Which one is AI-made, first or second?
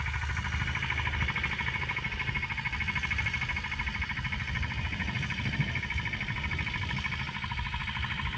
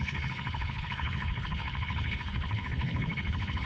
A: second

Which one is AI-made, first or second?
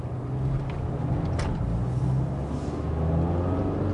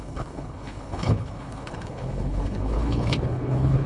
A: second